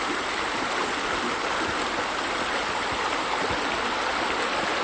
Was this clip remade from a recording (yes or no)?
no